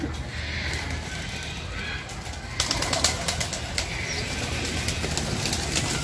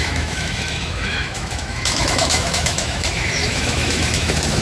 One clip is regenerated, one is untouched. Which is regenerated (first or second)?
second